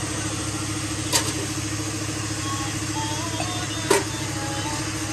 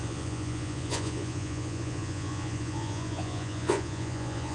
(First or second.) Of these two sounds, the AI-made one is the second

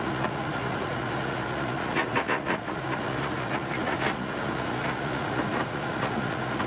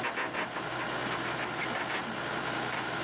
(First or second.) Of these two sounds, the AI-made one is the first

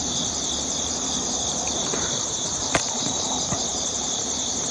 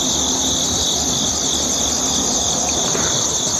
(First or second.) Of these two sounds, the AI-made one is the first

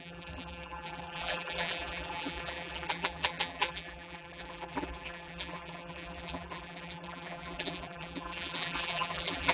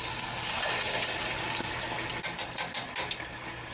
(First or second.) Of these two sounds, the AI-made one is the first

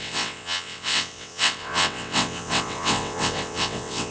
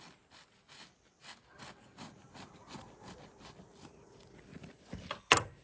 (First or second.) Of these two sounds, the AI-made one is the first